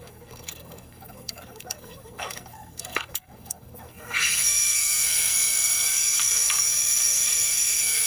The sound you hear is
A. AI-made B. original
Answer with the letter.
A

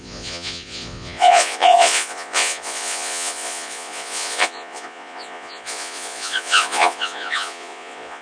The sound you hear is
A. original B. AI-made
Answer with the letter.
B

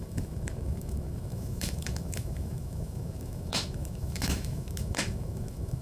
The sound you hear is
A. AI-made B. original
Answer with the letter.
A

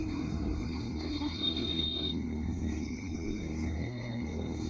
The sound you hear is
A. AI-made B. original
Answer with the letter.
A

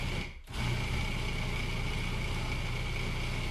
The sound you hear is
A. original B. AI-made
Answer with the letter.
A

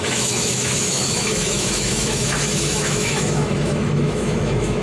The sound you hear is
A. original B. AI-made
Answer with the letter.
B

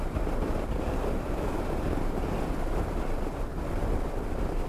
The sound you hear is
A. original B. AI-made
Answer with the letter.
A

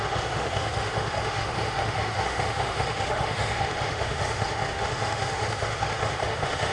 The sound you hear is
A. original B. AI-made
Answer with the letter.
B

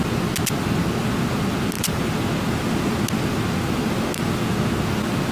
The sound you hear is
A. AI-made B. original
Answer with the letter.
B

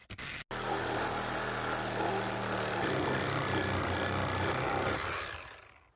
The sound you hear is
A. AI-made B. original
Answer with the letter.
B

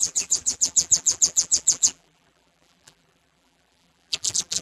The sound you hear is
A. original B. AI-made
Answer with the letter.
B